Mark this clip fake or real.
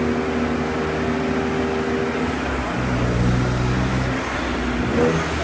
real